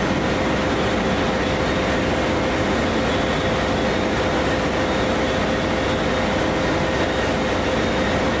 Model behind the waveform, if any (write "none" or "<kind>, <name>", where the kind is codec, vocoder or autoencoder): none